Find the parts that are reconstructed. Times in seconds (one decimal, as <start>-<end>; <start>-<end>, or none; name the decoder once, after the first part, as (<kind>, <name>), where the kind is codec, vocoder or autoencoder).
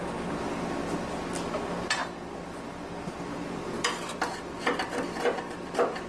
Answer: none